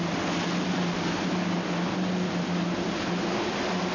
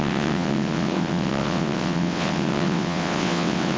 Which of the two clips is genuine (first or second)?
first